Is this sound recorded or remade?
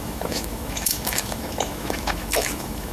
remade